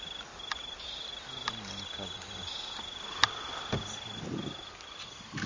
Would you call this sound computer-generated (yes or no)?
no